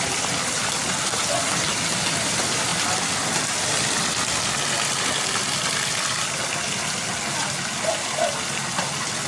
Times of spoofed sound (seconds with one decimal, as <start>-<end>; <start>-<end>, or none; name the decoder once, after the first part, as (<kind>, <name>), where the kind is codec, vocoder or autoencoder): none